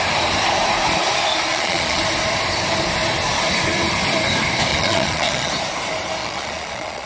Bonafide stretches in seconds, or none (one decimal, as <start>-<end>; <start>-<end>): 0.0-1.5; 2.0-4.7; 5.5-6.2